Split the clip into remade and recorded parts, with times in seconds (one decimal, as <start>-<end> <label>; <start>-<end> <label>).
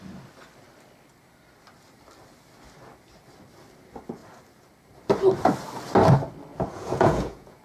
0.0-6.5 recorded; 6.5-7.6 remade